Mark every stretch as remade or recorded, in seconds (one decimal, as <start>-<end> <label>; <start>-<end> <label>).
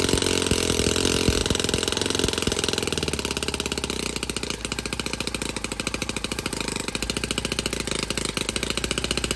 0.0-6.0 recorded; 6.0-6.9 remade; 6.9-9.4 recorded